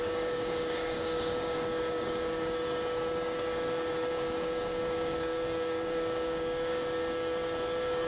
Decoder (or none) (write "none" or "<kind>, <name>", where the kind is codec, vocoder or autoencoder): codec, DAC